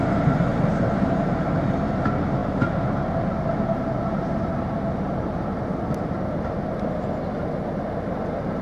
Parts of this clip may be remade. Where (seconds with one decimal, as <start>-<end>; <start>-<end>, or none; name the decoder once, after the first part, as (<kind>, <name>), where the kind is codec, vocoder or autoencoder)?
0.5-1.9 (vocoder, BigVGAN v2)